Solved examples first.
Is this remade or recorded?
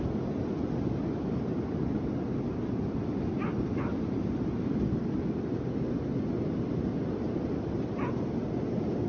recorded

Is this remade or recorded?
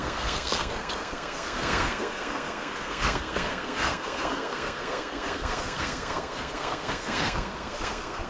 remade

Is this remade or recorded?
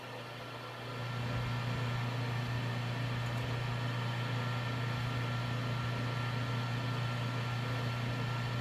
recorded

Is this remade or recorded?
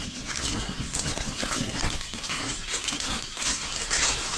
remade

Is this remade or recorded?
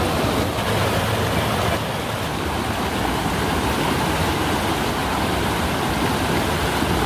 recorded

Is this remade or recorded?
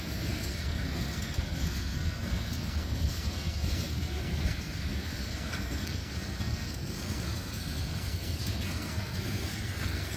remade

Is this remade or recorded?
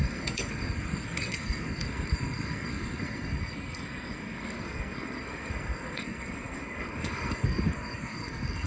remade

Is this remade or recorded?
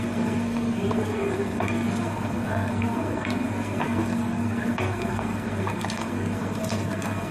remade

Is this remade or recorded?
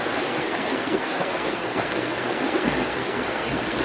remade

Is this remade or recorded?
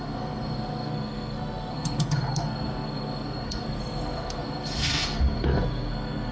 remade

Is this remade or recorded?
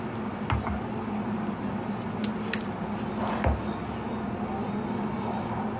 recorded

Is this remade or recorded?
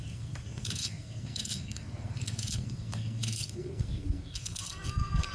remade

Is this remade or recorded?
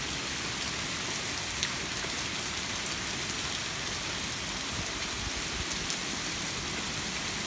recorded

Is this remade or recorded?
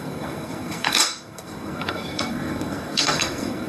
remade